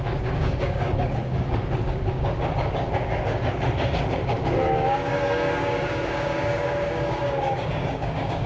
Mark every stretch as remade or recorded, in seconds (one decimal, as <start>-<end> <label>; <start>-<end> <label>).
0.0-8.5 remade